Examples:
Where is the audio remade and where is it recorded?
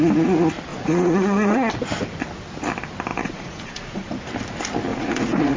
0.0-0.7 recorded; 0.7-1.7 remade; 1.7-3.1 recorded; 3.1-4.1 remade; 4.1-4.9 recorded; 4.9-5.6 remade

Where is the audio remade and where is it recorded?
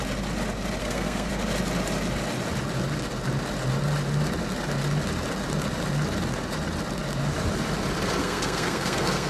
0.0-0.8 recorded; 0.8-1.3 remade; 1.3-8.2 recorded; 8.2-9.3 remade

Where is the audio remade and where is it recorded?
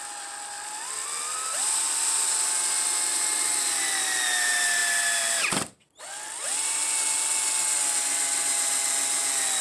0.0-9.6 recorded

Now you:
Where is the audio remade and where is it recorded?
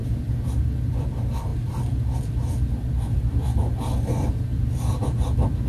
0.0-5.7 recorded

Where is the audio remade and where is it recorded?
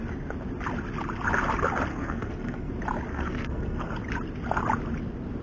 0.0-1.9 recorded; 1.9-2.7 remade; 2.7-3.1 recorded; 3.1-3.9 remade; 3.9-5.4 recorded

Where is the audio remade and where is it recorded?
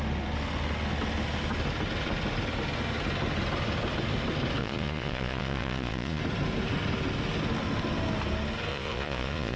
0.0-4.6 recorded; 4.6-6.2 remade; 6.2-8.7 recorded; 8.7-9.6 remade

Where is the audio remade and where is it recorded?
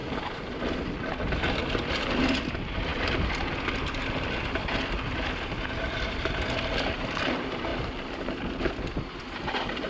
0.0-9.9 recorded